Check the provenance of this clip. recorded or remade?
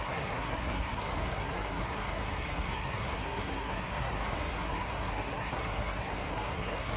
remade